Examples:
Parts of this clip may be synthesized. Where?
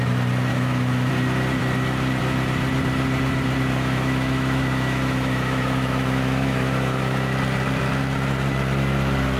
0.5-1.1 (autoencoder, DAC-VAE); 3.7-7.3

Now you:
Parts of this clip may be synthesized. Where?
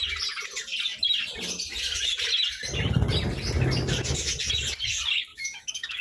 5.3-6.0 (autoencoder, DAC-VAE)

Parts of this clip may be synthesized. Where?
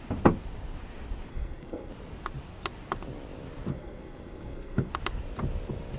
1.3-1.9 (codec, SNAC); 3.7-4.9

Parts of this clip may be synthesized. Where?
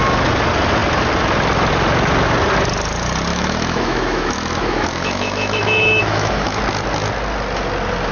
3.3-6.6 (autoencoder, DAC-VAE)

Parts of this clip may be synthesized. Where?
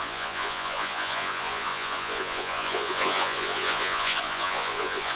0.0-5.2 (vocoder, Vocos)